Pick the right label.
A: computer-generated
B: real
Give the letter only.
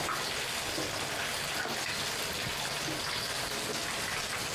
B